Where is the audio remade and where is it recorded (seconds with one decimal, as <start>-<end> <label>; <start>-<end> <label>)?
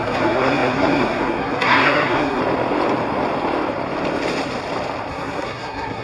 0.0-2.4 remade; 2.4-5.1 recorded; 5.1-6.0 remade